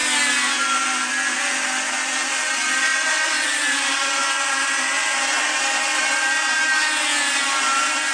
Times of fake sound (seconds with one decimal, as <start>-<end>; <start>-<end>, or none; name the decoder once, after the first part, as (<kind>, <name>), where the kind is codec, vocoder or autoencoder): 2.9-4.0 (vocoder, BigVGAN v2)